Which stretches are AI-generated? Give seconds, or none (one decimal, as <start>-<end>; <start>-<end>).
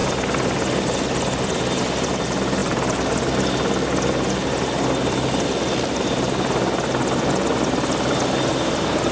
none